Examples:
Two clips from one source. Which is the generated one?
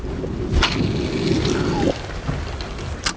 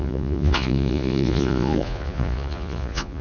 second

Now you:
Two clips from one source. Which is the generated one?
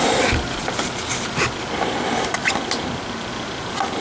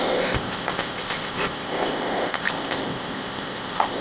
second